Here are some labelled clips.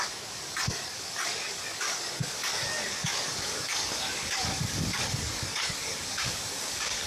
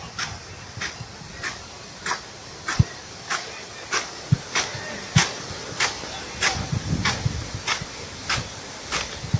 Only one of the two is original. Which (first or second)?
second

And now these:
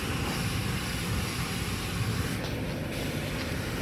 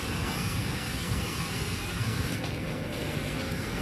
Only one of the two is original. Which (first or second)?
first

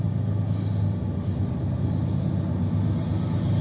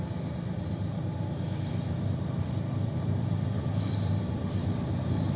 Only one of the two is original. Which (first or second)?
first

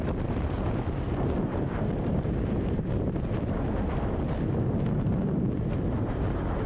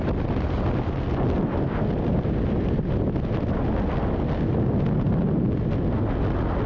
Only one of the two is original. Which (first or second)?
second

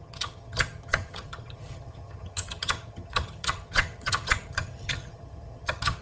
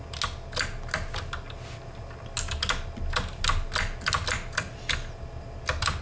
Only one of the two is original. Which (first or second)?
second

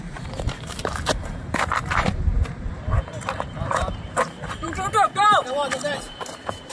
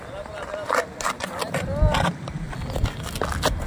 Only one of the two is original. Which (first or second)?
second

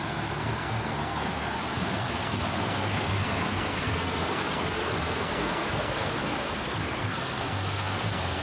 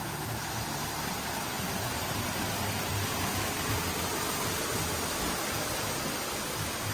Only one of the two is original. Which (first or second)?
second